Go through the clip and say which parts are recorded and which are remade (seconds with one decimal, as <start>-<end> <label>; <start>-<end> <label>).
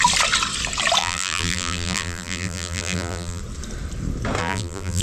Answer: 0.0-1.0 recorded; 1.0-3.4 remade; 3.4-4.4 recorded; 4.4-5.0 remade